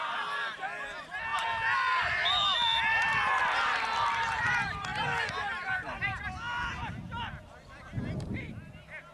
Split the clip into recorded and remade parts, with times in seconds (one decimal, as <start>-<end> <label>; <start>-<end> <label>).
0.0-9.1 recorded